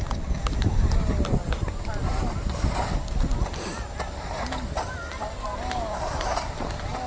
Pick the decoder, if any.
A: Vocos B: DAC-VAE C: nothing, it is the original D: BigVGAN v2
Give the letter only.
C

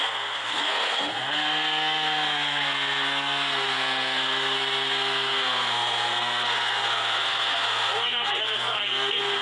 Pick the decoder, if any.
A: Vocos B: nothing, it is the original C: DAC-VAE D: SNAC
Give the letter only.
D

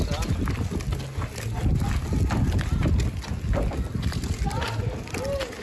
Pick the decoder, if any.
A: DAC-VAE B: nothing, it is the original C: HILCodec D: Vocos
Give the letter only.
B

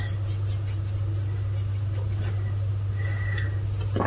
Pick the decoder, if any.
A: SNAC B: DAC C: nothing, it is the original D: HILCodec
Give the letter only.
C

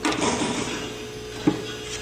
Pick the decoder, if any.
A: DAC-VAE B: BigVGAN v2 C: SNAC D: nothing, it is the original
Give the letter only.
D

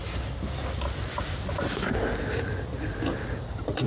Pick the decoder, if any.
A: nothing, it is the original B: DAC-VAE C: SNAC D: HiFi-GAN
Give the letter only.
A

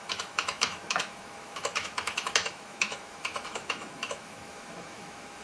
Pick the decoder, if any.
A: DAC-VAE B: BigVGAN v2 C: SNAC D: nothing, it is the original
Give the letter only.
A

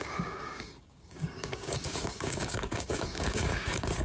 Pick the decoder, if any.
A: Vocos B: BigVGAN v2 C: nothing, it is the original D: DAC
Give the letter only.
D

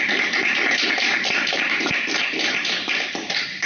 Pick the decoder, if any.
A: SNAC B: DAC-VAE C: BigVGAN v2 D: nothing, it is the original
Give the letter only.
C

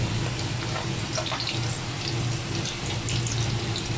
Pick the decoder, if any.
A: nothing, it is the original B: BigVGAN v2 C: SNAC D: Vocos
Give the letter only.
A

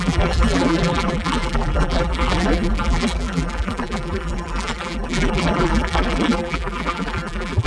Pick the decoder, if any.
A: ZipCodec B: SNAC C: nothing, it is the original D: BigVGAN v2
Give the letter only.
D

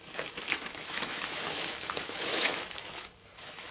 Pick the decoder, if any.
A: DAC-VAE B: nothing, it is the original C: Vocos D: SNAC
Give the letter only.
A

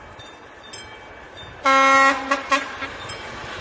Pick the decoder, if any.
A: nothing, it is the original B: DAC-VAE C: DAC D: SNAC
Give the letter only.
A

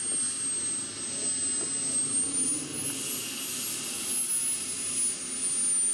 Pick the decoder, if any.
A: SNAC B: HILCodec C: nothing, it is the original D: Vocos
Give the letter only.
C